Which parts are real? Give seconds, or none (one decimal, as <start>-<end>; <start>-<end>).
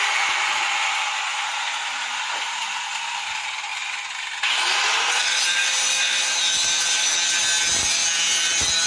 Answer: 0.0-1.3; 3.3-8.9